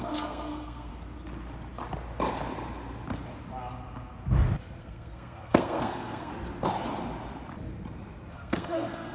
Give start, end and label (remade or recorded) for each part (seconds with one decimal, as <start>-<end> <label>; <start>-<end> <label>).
0.0-0.9 remade; 0.9-4.8 recorded; 4.8-6.3 remade; 6.3-8.3 recorded; 8.3-9.1 remade